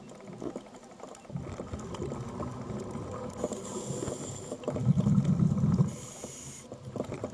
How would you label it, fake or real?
real